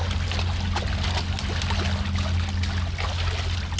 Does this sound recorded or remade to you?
recorded